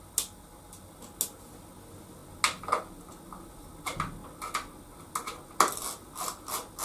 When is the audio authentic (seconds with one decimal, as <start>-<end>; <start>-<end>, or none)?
0.0-6.8